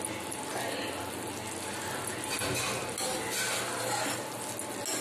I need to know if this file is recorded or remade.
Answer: recorded